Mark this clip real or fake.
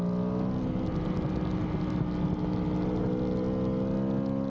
real